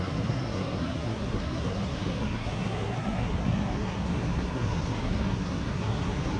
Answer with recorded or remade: remade